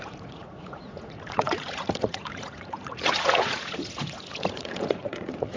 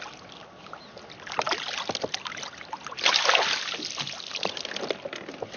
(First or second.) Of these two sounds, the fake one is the first